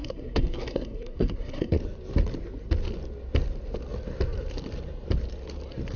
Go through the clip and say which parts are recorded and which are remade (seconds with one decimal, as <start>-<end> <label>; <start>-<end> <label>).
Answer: 0.0-1.8 remade; 1.8-6.0 recorded